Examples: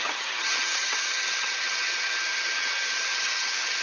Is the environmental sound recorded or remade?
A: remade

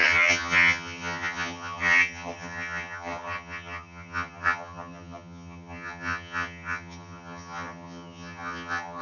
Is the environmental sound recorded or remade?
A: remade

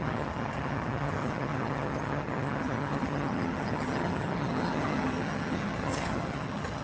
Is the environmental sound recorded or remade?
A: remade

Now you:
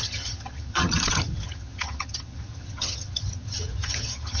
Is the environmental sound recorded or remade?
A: remade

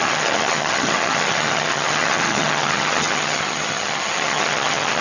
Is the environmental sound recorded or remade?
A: remade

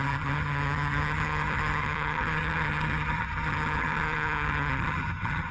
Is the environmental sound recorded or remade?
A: remade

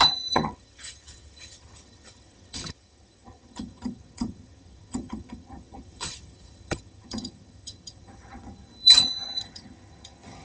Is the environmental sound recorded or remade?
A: remade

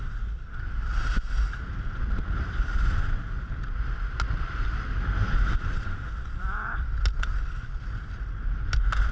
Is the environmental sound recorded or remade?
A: recorded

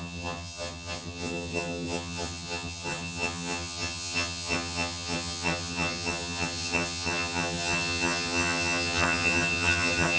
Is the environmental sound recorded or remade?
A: remade